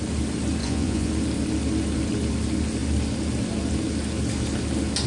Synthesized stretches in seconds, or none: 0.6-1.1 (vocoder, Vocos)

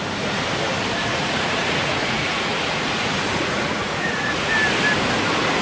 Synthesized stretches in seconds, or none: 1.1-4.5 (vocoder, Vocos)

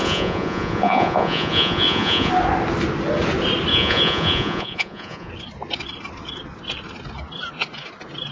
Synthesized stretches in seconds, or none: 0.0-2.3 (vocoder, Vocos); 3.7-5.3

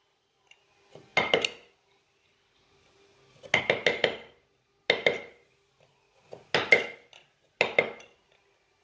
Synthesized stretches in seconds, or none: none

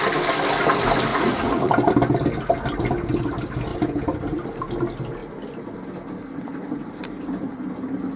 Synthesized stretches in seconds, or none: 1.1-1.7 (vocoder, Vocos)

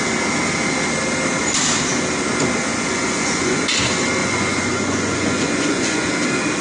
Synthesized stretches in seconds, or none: 2.7-3.6 (vocoder, Vocos); 4.2-6.1